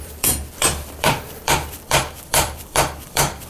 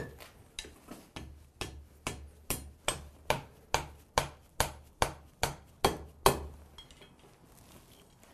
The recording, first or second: second